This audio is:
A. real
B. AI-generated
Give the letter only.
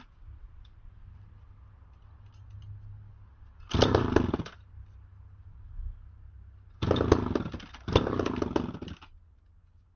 A